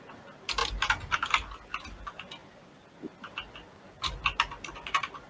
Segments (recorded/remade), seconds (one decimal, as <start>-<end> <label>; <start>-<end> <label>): 0.0-5.3 recorded